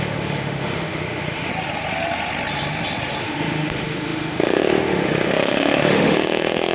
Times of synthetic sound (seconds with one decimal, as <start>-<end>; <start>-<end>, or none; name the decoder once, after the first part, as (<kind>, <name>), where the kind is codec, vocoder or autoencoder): 0.0-1.5 (autoencoder, DAC-VAE); 3.2-6.7